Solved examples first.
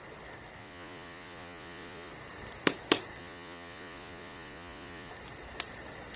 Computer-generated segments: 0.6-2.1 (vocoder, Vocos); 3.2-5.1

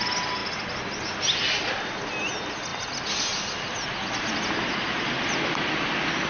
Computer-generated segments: none

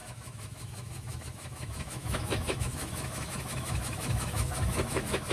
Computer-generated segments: 0.0-5.3 (autoencoder, DAC-VAE)

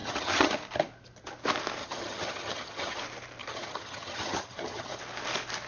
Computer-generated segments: 0.0-0.5 (vocoder, HiFi-GAN); 1.8-3.0; 3.4-5.0

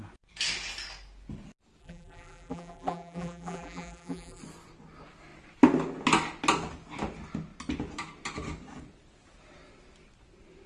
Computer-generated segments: 1.8-4.4 (vocoder, BigVGAN v2)